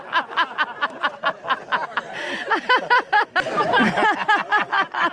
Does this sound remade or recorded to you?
recorded